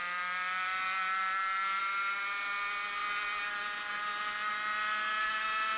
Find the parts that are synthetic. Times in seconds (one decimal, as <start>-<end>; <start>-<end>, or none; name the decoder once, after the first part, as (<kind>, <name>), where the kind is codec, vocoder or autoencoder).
none